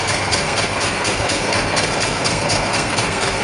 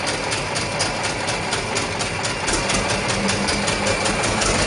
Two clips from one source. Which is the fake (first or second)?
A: first